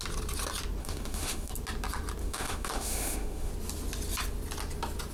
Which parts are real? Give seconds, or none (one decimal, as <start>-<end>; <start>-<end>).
0.0-0.8; 1.5-2.2; 3.5-5.1